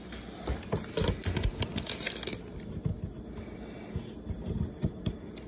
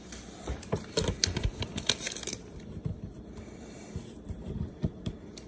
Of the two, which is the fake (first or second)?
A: second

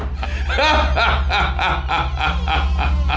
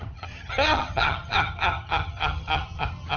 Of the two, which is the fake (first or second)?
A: second